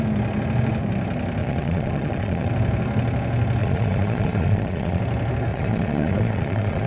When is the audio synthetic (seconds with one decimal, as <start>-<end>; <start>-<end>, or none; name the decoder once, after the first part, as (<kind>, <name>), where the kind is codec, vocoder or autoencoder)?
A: 1.4-2.5 (vocoder, Vocos); 3.6-5.0; 5.5-6.9